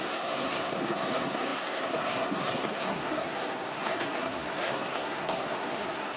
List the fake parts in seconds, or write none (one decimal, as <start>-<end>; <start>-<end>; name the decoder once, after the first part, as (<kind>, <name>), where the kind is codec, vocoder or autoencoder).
0.0-6.2 (codec, SNAC)